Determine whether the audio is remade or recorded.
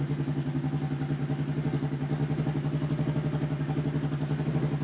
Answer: recorded